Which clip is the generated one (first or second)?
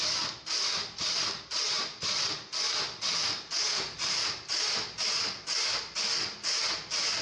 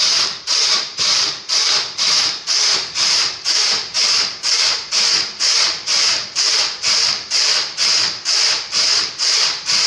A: second